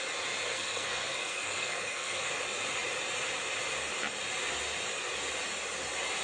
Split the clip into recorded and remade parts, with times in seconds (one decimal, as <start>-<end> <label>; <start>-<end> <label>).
0.0-0.5 recorded; 0.5-2.3 remade; 2.3-6.2 recorded